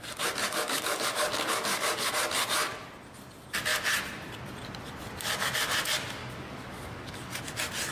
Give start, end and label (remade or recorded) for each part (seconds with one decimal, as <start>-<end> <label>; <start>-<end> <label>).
0.0-0.4 recorded; 0.4-2.1 remade; 2.1-6.2 recorded; 6.2-7.4 remade; 7.4-7.9 recorded